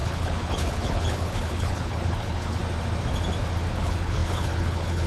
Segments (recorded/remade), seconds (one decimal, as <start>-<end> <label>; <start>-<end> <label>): 0.0-2.6 remade; 2.6-3.7 recorded; 3.7-5.1 remade